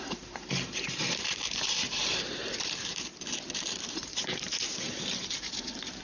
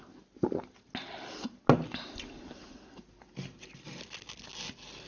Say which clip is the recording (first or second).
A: second